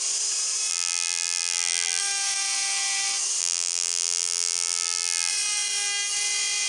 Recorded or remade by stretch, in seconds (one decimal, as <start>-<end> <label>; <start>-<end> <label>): 0.0-0.7 recorded; 0.7-2.0 remade; 2.0-3.4 recorded; 3.4-5.3 remade; 5.3-6.7 recorded